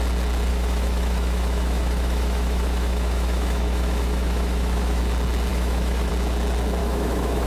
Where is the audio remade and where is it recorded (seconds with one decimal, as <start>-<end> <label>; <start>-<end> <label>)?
0.0-0.5 recorded; 0.5-5.0 remade; 5.0-5.5 recorded; 5.5-6.1 remade; 6.1-6.8 recorded; 6.8-7.5 remade